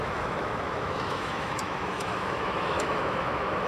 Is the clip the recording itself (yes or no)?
no